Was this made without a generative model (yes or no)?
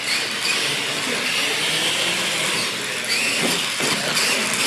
yes